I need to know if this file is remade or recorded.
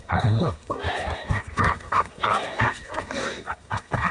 remade